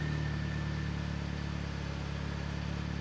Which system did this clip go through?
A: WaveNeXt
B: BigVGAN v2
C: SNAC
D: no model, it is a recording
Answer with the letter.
D